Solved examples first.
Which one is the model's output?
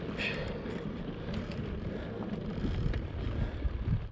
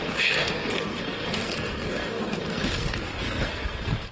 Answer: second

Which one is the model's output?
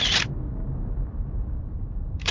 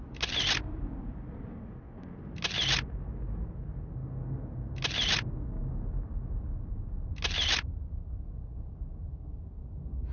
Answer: first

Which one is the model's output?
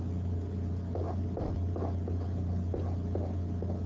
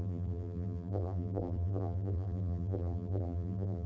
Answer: second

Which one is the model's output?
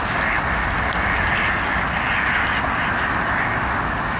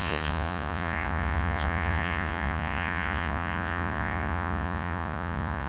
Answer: second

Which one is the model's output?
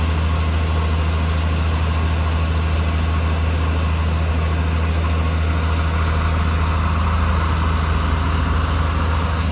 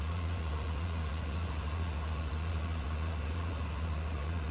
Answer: second